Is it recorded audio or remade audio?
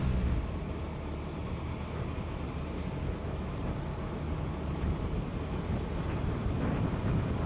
recorded